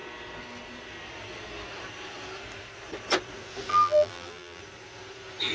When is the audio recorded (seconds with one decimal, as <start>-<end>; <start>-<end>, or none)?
0.0-3.7; 4.6-5.5